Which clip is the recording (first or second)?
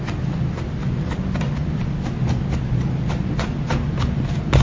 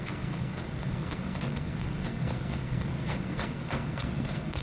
first